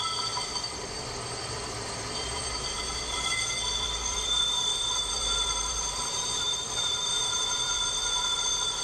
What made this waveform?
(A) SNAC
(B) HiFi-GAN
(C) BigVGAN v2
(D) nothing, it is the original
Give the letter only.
C